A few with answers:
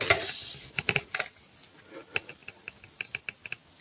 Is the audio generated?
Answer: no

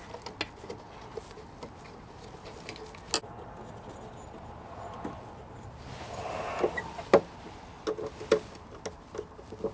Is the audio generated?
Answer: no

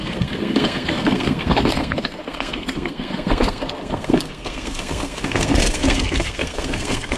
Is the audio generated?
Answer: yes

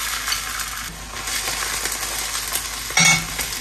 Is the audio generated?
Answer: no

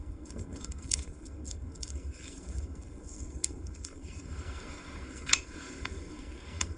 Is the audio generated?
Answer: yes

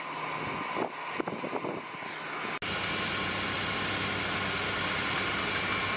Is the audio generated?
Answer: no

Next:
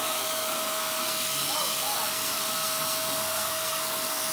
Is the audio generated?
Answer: yes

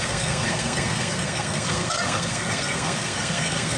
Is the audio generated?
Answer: yes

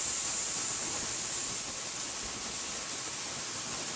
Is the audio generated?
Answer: no